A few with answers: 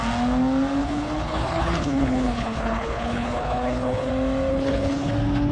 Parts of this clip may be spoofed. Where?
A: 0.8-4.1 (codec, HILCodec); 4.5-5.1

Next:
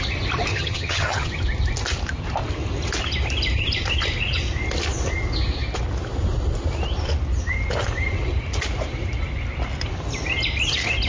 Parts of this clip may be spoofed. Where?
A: 0.5-1.3 (vocoder, HiFi-GAN)

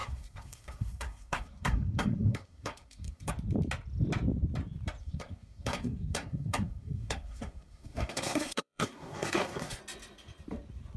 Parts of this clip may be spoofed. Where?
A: 0.0-3.3 (codec, SNAC); 5.0-9.8

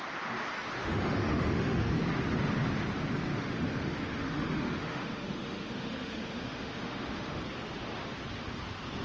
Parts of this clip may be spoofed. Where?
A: 0.8-1.9 (autoencoder, DAC-VAE); 3.3-7.4

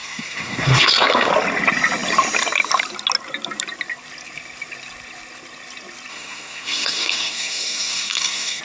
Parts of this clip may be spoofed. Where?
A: 0.0-1.3 (codec, SNAC); 6.1-8.6